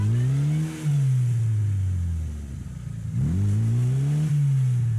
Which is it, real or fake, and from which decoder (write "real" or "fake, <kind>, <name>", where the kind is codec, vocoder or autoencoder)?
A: real